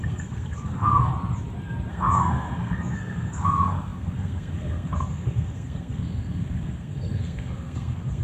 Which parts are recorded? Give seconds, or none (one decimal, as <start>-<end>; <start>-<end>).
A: 1.1-1.9